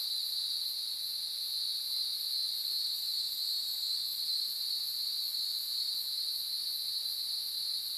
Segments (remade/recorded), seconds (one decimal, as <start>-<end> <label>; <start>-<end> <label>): 0.0-8.0 recorded